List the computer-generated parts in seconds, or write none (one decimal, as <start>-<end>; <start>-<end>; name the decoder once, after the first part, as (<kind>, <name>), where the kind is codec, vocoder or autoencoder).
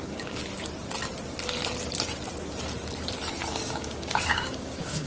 0.0-0.4 (codec, DAC); 3.5-5.1